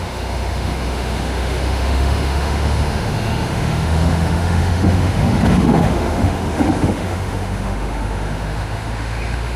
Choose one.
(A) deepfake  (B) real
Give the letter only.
A